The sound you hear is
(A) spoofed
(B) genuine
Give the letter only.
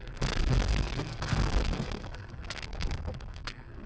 A